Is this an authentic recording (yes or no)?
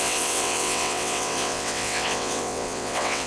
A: no